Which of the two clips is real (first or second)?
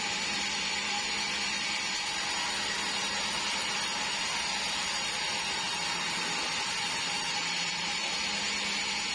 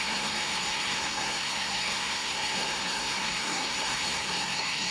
first